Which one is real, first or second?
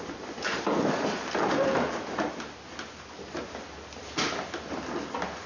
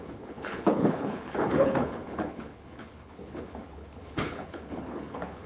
first